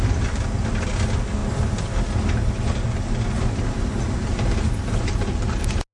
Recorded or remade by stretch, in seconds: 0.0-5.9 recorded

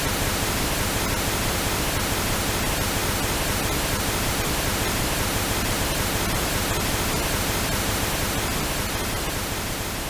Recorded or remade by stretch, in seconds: 0.0-10.1 recorded

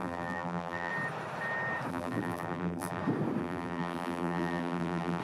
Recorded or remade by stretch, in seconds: 0.0-0.9 remade; 0.9-1.9 recorded; 1.9-3.0 remade; 3.0-3.4 recorded; 3.4-5.2 remade

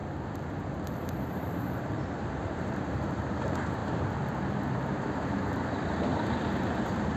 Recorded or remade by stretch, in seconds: 0.0-6.1 remade; 6.1-7.2 recorded

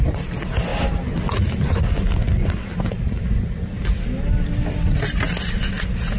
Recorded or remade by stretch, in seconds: 0.0-6.2 recorded

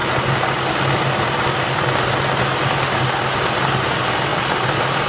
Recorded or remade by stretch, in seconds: 0.0-5.1 recorded